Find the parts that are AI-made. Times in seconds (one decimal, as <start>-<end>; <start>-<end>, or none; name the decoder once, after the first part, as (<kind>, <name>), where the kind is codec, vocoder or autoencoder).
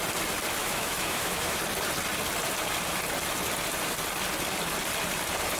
0.6-1.6 (autoencoder, DAC-VAE)